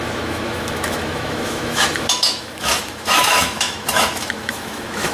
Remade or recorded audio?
remade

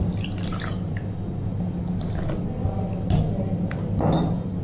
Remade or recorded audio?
recorded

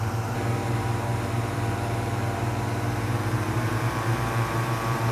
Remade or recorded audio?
remade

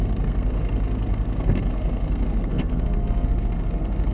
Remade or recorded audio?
remade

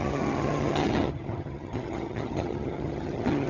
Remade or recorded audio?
remade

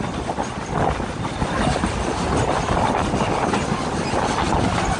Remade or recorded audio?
recorded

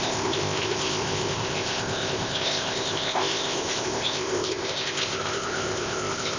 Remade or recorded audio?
remade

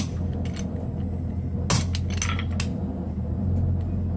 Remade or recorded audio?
recorded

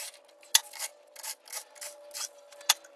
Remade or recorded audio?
recorded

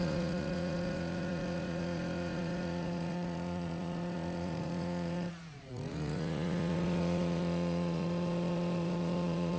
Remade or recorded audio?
remade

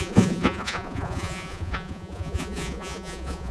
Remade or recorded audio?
remade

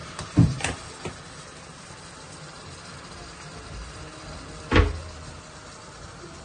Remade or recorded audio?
recorded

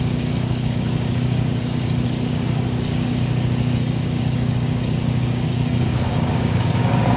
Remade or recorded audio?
remade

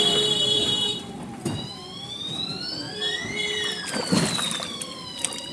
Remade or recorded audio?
remade